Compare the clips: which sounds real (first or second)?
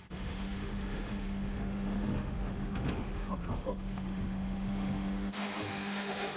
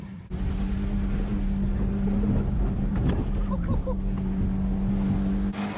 second